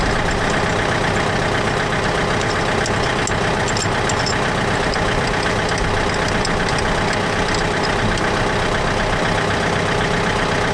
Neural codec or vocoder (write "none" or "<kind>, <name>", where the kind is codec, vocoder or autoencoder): none